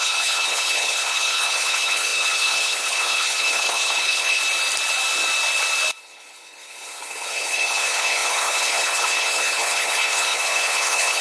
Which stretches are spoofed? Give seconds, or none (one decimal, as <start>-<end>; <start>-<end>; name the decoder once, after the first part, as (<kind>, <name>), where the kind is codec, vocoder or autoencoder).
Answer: 0.0-4.4 (codec, HILCodec); 6.0-11.2